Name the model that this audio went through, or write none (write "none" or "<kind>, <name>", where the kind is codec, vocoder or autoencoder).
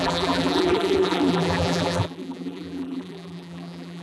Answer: vocoder, BigVGAN v2